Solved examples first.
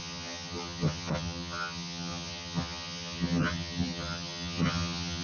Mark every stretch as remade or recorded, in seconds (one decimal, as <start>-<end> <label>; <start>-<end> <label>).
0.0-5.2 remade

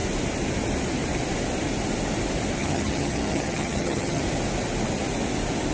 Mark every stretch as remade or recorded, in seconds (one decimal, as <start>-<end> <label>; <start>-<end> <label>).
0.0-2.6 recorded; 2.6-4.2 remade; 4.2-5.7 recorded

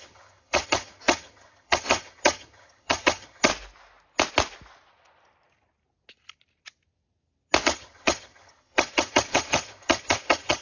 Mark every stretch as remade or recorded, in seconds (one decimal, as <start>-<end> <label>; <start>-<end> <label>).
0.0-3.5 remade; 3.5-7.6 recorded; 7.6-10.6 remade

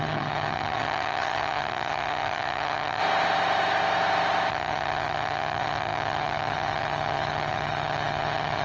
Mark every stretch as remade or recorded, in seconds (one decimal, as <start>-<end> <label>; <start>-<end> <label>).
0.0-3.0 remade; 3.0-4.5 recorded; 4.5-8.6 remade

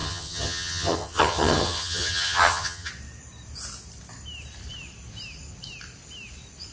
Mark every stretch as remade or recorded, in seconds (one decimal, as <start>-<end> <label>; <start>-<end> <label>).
0.0-2.9 remade; 2.9-6.7 recorded

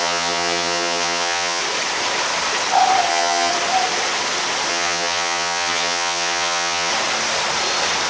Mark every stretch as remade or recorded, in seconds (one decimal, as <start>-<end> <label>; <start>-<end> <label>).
0.0-1.6 remade; 1.6-3.1 recorded; 3.1-3.5 remade; 3.5-4.7 recorded; 4.7-6.9 remade; 6.9-8.1 recorded